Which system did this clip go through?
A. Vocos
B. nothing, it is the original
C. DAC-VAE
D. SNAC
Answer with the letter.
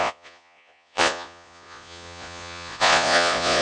A